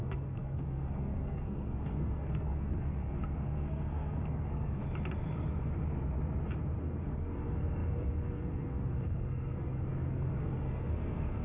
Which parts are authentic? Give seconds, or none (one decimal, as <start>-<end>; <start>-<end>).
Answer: 4.8-6.8